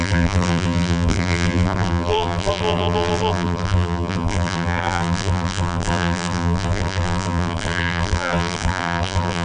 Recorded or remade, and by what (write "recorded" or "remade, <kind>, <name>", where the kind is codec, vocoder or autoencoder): remade, vocoder, BigVGAN v2